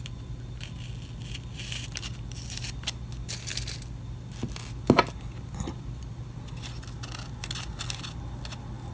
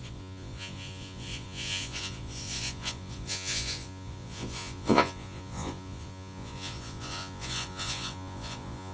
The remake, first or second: second